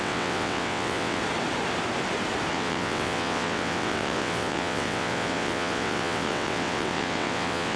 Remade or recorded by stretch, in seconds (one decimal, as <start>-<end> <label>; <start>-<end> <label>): 0.0-1.2 remade; 1.2-2.5 recorded; 2.5-7.8 remade